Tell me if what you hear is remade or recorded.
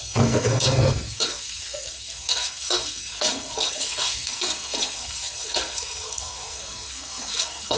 remade